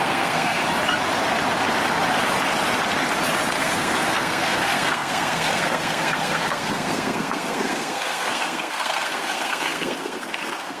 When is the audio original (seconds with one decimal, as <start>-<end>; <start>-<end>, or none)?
0.6-3.6